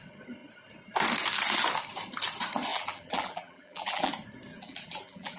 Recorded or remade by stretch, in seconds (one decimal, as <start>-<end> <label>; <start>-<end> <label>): 0.0-2.7 recorded; 2.7-4.1 remade; 4.1-4.5 recorded; 4.5-5.4 remade